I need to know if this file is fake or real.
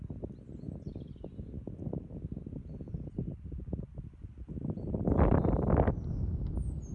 real